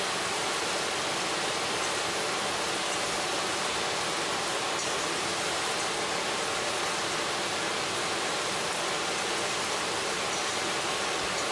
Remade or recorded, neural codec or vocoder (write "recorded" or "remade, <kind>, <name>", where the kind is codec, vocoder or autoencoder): recorded